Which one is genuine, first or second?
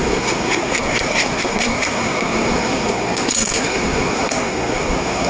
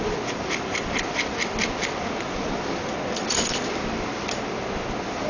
second